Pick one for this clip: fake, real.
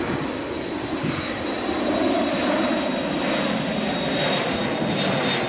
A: real